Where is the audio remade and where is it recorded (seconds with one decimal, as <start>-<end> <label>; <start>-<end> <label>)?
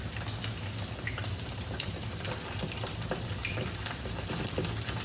0.0-1.2 recorded; 1.2-4.2 remade; 4.2-5.0 recorded